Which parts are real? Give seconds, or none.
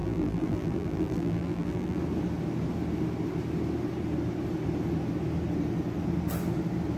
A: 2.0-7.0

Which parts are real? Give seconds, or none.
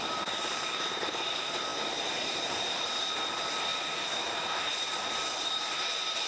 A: none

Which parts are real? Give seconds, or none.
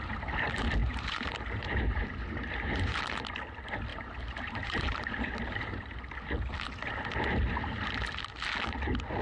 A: 0.0-0.8; 3.0-3.9; 6.1-9.2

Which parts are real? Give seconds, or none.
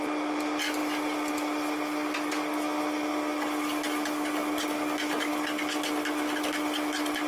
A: 0.0-7.3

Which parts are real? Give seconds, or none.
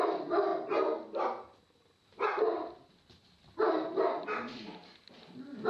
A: 0.5-3.4; 4.8-5.7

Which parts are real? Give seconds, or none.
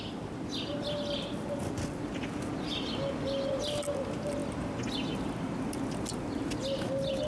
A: 0.0-7.3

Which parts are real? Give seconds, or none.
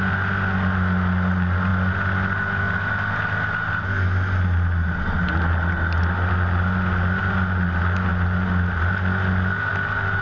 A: 0.0-10.2